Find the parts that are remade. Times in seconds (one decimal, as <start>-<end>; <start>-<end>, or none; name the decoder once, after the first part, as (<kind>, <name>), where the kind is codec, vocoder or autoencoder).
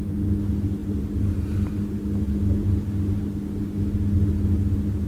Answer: none